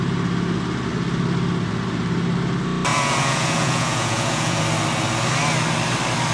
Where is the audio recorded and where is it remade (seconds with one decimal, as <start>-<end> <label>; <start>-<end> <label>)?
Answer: 0.0-2.9 recorded; 2.9-4.6 remade; 4.6-6.3 recorded